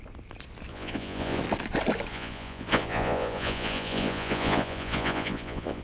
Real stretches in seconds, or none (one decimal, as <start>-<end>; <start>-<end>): 0.0-0.7; 1.4-2.1